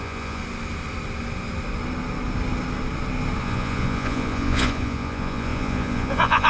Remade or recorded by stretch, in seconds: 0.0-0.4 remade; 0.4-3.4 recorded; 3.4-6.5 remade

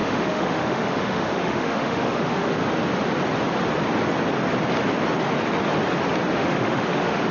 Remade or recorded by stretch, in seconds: 0.0-2.6 remade; 2.6-6.3 recorded; 6.3-7.3 remade

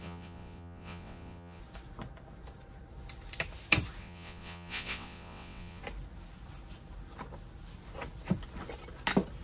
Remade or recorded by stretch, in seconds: 0.0-1.6 remade; 1.6-4.0 recorded; 4.0-5.8 remade; 5.8-9.4 recorded

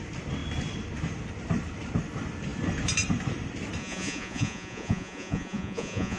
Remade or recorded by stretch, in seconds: 0.0-3.8 recorded; 3.8-6.2 remade

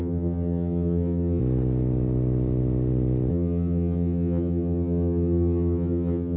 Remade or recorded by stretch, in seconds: 0.0-1.4 remade; 1.4-3.3 recorded; 3.3-6.4 remade